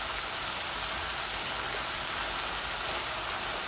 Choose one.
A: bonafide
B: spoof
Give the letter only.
A